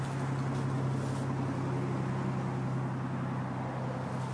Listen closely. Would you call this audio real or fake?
real